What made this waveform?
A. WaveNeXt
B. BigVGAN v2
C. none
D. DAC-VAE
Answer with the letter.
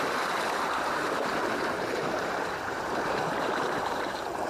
B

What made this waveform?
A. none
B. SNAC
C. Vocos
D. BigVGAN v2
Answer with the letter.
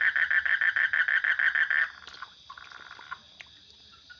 A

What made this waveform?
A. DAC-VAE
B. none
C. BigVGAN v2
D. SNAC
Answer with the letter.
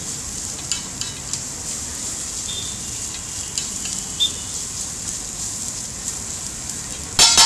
B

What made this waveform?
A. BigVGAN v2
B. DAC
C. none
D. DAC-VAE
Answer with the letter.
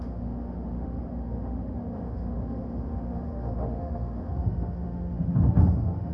D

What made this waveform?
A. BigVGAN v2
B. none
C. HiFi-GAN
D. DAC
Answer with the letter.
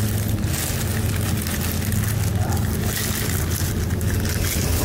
B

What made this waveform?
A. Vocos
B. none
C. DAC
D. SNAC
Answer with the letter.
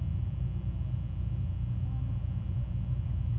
B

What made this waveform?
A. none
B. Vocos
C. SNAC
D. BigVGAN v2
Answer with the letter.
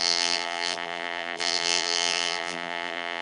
D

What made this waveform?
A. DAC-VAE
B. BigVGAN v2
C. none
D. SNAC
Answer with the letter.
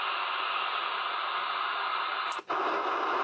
C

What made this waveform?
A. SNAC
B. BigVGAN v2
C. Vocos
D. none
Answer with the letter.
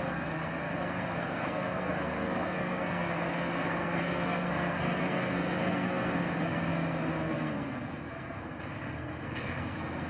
A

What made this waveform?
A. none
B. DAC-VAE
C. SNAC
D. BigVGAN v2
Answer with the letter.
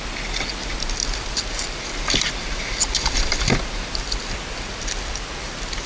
A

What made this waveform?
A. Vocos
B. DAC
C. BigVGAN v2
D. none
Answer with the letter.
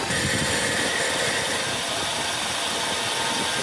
D